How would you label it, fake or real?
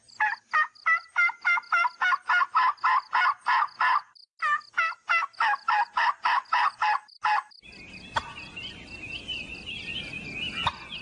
real